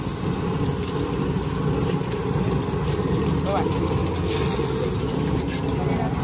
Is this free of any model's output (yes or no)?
yes